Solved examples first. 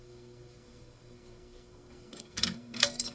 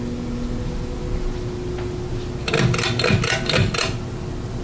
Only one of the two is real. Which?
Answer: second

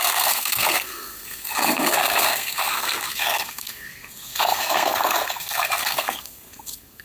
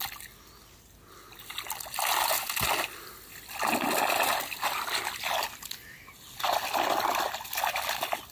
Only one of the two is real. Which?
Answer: second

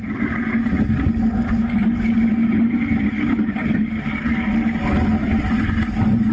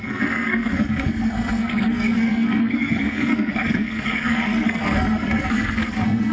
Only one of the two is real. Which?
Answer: first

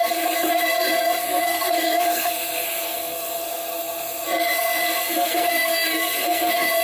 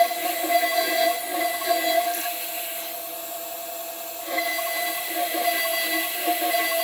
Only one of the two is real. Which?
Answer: second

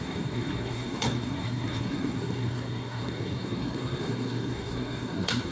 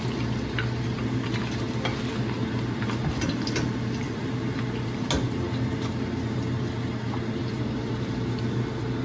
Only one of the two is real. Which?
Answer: second